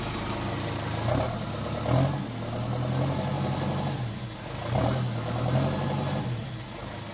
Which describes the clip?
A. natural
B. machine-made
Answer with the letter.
A